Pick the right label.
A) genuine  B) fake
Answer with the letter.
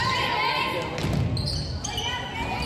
A